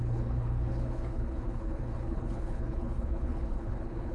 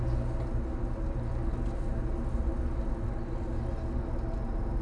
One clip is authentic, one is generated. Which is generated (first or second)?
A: first